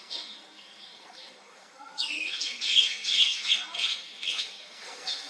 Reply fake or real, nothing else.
fake